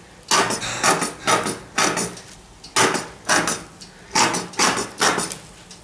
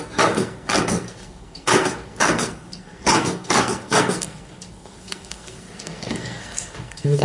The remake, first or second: second